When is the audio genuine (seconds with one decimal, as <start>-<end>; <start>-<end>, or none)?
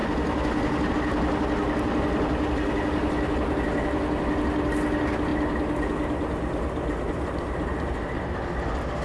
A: 0.0-9.0